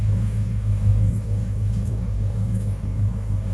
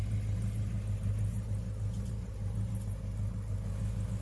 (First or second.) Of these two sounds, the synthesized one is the first